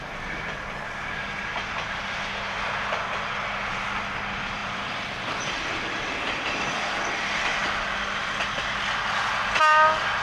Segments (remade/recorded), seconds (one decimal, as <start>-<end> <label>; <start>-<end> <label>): 0.0-4.6 recorded; 4.6-7.1 remade; 7.1-10.2 recorded